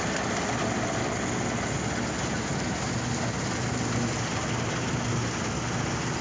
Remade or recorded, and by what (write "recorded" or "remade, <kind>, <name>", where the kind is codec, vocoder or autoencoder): recorded